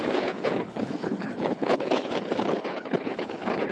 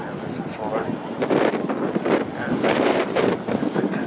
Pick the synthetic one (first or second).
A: first